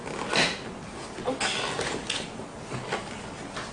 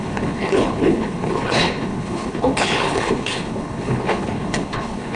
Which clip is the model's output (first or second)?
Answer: second